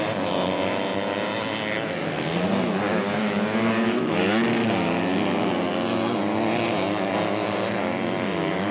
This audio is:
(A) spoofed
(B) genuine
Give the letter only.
B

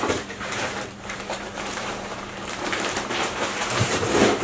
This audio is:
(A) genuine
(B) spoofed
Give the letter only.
B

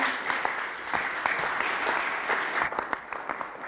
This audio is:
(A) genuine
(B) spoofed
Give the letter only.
A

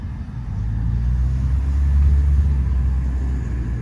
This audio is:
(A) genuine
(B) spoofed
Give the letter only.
A